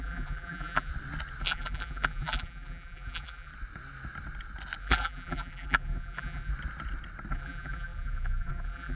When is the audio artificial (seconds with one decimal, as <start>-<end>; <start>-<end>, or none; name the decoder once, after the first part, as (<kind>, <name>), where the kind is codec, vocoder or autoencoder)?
0.0-0.9 (vocoder, BigVGAN v2); 1.4-3.5; 4.8-6.5; 7.3-9.0